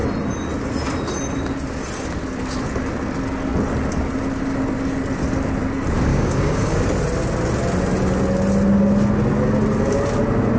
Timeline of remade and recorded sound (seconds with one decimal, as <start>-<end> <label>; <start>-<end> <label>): 0.0-6.1 recorded; 6.1-6.8 remade; 6.8-10.6 recorded

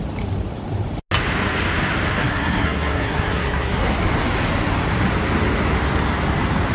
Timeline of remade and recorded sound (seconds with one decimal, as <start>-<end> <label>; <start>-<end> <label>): 0.0-2.2 recorded; 2.2-4.0 remade; 4.0-6.7 recorded